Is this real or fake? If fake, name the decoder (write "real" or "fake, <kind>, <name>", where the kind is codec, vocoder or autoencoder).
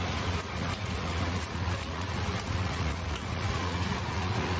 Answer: fake, vocoder, Vocos